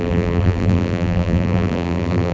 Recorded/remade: remade